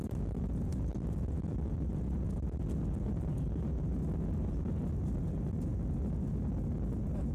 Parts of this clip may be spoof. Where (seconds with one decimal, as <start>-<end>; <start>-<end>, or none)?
none